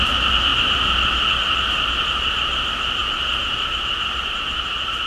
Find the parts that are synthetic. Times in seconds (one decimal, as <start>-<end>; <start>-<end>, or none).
none